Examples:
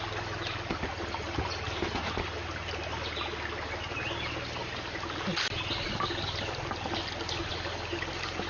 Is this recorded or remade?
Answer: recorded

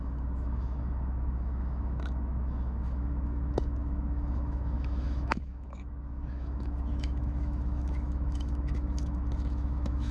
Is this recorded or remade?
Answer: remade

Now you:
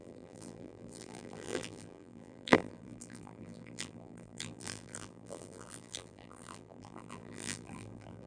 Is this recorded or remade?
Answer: remade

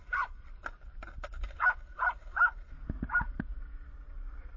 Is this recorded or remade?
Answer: recorded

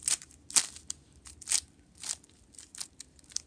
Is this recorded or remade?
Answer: recorded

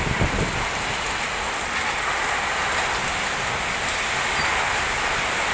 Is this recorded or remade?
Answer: recorded